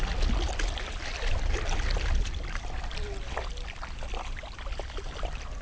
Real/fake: real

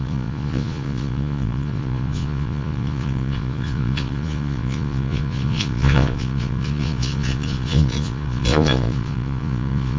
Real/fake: fake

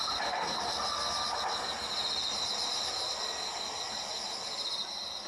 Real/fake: real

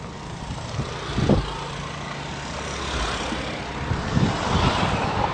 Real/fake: real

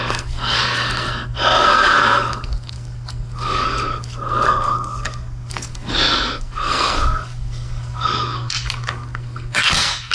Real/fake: fake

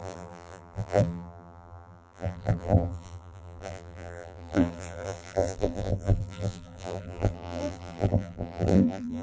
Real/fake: fake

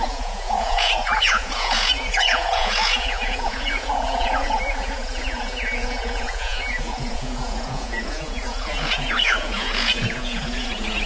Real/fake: fake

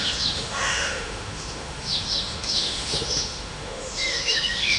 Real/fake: fake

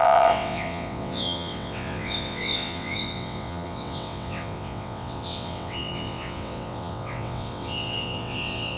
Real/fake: fake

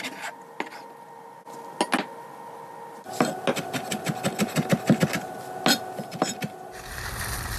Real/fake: real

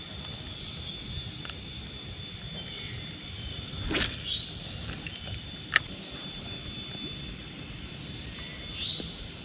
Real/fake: real